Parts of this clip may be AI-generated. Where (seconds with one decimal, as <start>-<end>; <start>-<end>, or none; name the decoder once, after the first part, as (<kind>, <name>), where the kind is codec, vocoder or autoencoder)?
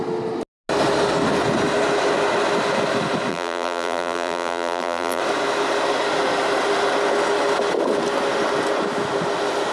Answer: 3.3-5.2 (vocoder, BigVGAN v2)